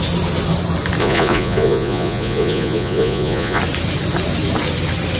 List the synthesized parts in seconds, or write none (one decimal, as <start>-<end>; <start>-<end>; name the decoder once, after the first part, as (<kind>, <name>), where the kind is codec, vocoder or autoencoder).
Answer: 1.0-3.6 (vocoder, Vocos)